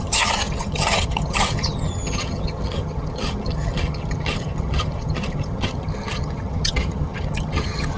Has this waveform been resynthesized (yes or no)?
yes